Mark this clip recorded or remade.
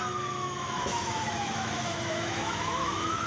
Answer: remade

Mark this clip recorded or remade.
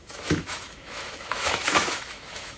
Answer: remade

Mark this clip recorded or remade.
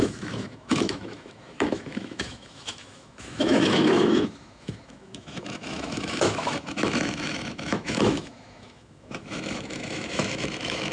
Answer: remade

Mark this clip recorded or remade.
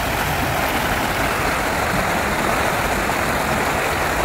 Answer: recorded